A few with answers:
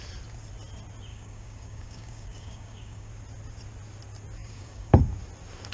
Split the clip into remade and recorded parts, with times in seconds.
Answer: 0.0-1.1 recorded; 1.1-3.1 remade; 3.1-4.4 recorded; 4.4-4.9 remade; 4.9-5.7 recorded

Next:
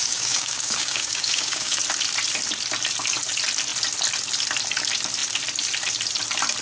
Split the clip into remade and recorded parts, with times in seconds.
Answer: 0.0-1.8 remade; 1.8-6.6 recorded

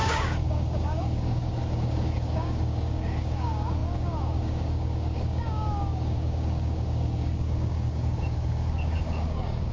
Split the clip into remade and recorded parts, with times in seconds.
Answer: 0.0-9.7 remade

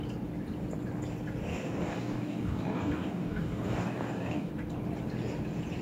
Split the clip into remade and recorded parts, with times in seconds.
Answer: 0.0-1.5 recorded; 1.5-4.5 remade; 4.5-5.8 recorded

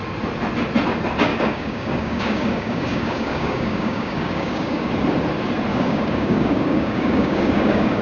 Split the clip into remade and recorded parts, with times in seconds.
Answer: 0.0-1.3 recorded; 1.3-4.9 remade; 4.9-5.7 recorded; 5.7-8.0 remade

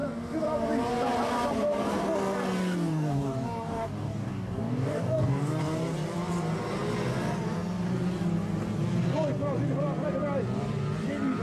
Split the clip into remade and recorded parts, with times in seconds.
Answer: 0.0-2.6 recorded; 2.6-5.6 remade; 5.6-11.4 recorded

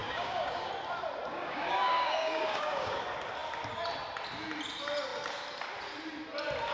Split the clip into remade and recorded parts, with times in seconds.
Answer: 0.0-0.7 remade; 0.7-1.3 recorded; 1.3-3.0 remade; 3.0-6.7 recorded

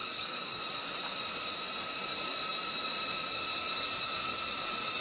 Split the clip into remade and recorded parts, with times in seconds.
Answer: 0.0-0.6 remade; 0.6-5.0 recorded